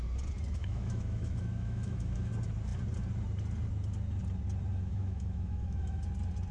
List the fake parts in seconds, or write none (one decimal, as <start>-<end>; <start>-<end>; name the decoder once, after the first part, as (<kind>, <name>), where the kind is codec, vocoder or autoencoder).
0.6-2.3 (autoencoder, DAC-VAE); 4.7-6.0